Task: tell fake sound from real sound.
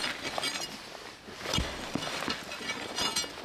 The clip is real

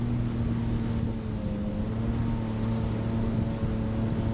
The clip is real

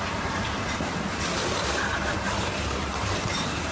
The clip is fake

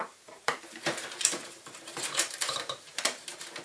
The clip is fake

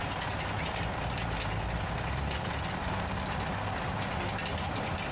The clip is real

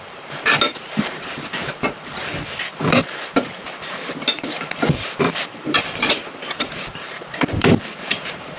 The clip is fake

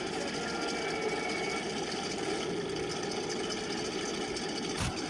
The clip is real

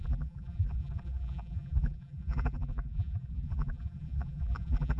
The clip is fake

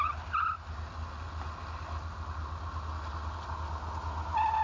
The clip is real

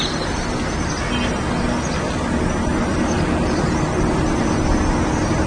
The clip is real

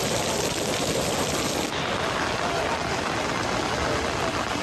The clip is real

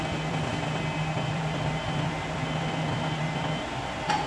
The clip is fake